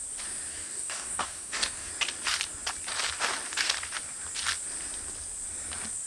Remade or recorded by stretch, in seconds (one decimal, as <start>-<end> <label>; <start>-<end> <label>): 0.0-0.5 recorded; 0.5-1.9 remade; 1.9-6.1 recorded

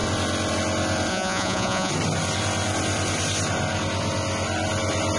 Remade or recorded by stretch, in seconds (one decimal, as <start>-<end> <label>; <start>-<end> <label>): 0.0-1.1 recorded; 1.1-1.9 remade; 1.9-5.2 recorded